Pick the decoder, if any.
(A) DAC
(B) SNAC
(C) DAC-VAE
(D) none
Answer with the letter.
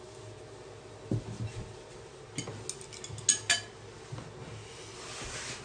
D